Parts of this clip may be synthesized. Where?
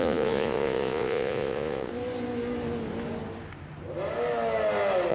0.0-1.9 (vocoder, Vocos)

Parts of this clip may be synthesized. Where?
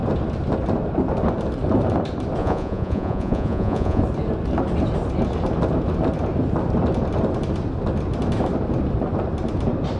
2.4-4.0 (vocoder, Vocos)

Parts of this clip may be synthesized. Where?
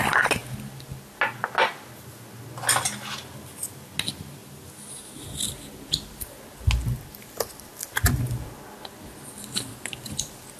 none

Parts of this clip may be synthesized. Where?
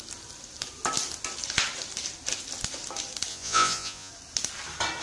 3.3-4.1 (vocoder, Vocos)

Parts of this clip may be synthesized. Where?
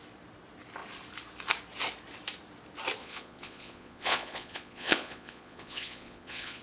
3.0-6.6 (vocoder, Vocos)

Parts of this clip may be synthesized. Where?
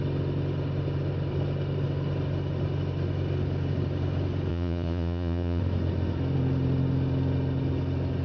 4.5-5.6 (vocoder, Vocos)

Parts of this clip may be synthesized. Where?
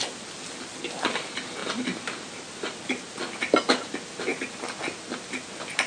none